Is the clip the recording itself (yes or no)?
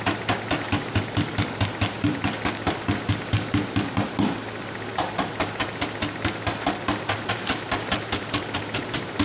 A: yes